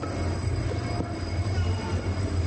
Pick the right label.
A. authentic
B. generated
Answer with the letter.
A